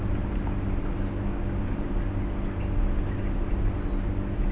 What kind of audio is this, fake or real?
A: real